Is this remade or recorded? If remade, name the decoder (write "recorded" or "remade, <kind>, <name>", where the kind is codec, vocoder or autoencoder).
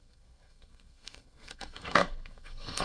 remade, codec, SNAC